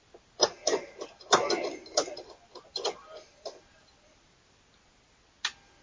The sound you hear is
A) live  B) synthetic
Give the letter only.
A